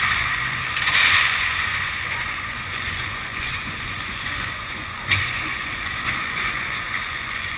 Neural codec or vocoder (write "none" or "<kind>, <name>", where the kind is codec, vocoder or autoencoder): vocoder, Vocos